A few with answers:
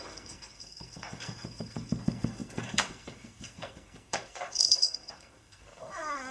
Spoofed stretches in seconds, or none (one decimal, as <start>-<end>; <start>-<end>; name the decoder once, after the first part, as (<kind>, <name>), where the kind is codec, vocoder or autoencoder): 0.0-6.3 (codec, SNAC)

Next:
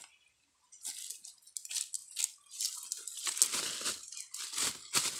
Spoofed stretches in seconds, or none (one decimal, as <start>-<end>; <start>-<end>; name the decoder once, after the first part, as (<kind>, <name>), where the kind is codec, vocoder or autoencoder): none

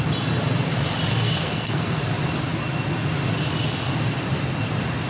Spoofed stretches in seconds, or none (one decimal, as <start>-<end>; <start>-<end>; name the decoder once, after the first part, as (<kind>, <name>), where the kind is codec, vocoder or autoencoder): 1.1-2.0 (codec, SNAC)

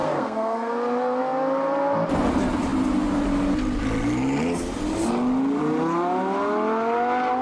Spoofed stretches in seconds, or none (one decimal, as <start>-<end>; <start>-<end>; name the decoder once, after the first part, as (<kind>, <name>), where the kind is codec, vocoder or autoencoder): 0.0-0.7 (codec, SNAC)